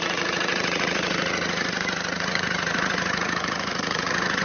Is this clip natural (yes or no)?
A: no